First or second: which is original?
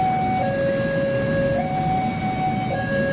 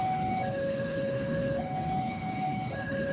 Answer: first